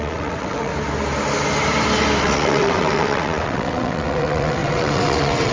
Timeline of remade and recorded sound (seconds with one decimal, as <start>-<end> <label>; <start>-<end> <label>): 0.0-0.7 remade; 0.7-2.2 recorded; 2.2-5.5 remade